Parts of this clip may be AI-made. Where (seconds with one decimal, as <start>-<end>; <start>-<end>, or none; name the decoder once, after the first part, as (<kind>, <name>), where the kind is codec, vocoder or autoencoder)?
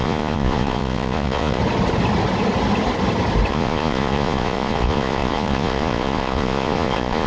0.0-1.6 (vocoder, Vocos); 3.5-7.3